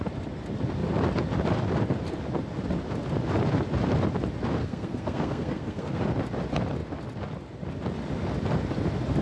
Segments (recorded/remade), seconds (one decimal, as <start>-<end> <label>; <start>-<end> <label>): 0.0-4.6 recorded; 4.6-6.0 remade; 6.0-9.2 recorded